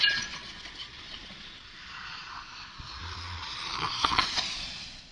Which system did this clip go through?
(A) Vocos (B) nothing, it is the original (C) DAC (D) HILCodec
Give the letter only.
A